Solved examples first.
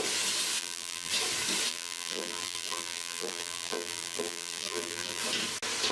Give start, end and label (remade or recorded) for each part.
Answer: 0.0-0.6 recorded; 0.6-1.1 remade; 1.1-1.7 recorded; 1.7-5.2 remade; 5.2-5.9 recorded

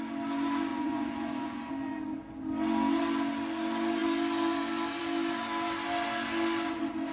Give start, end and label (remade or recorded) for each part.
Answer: 0.0-0.7 recorded; 0.7-1.7 remade; 1.7-7.1 recorded

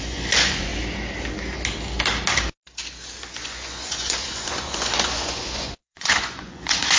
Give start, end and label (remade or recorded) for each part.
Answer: 0.0-0.7 remade; 0.7-3.3 recorded; 3.3-7.0 remade